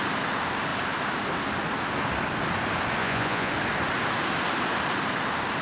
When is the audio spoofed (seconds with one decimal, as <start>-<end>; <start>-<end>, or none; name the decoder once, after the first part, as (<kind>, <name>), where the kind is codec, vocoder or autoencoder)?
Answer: 3.0-3.5 (vocoder, Vocos)